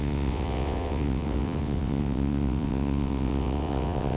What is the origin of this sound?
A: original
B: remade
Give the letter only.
B